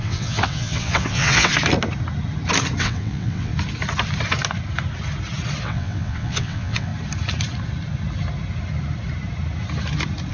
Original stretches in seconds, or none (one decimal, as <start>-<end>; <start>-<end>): 1.5-2.8; 3.5-5.6; 6.9-10.3